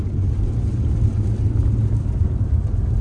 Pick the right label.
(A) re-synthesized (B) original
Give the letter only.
B